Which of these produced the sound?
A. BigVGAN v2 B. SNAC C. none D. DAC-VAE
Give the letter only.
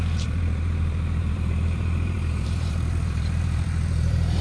A